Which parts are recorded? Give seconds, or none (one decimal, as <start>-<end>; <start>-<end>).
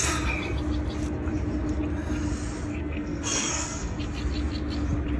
0.0-2.7; 4.0-5.2